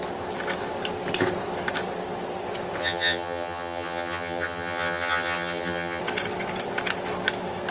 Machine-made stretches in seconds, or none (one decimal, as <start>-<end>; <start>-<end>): 2.8-6.0